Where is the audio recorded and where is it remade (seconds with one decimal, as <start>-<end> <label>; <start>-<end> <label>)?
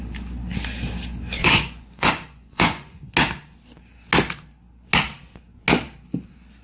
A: 0.0-1.4 recorded; 1.4-3.1 remade; 3.1-6.6 recorded